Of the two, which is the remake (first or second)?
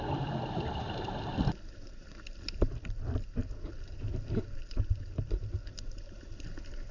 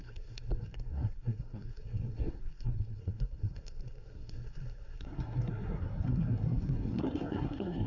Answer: second